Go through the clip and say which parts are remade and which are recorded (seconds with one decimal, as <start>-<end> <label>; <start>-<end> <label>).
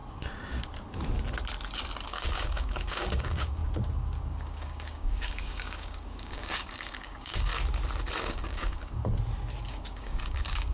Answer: 0.0-2.1 recorded; 2.1-3.6 remade; 3.6-4.3 recorded; 4.3-7.5 remade; 7.5-8.2 recorded; 8.2-9.0 remade; 9.0-9.6 recorded; 9.6-10.7 remade